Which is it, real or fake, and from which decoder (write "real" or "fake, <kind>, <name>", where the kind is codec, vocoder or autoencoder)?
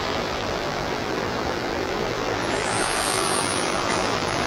fake, vocoder, BigVGAN v2